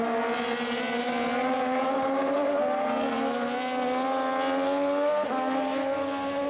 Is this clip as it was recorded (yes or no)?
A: yes